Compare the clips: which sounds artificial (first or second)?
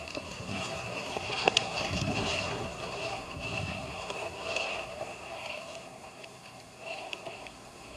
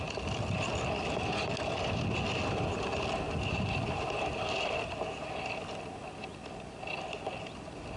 first